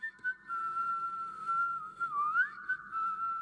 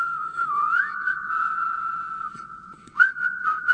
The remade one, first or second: second